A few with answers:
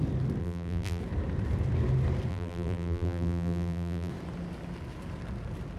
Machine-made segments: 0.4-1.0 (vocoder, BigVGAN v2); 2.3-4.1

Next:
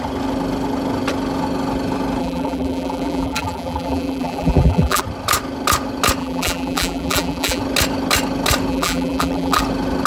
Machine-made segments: 2.2-5.0 (vocoder, BigVGAN v2); 6.2-7.6; 8.7-9.6